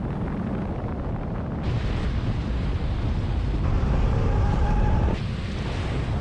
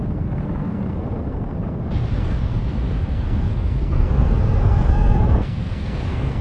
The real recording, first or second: first